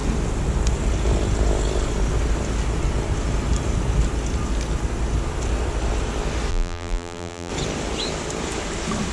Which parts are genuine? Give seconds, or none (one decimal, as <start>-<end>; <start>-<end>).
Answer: 0.0-6.5; 7.5-9.1